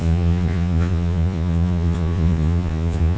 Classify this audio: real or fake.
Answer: fake